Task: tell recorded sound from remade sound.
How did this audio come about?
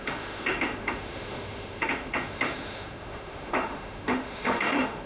remade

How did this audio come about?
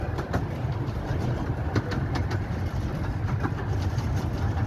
recorded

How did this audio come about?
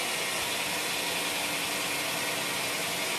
recorded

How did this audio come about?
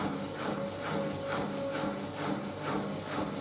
recorded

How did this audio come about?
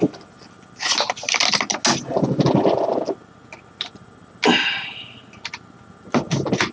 recorded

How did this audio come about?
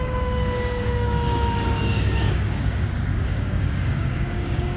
remade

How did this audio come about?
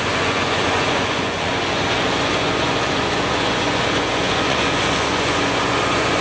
remade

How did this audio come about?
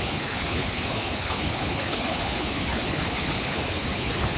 remade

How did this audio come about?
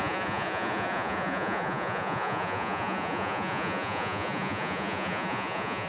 remade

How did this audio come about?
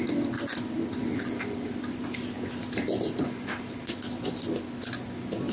recorded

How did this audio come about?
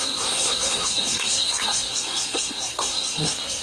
remade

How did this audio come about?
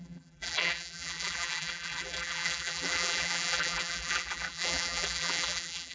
remade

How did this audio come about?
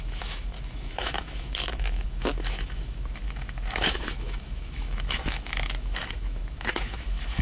remade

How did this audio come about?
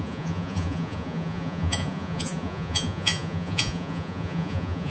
remade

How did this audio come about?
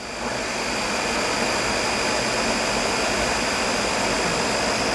recorded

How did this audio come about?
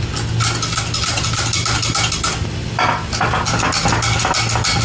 recorded